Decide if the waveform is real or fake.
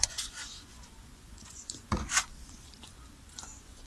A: fake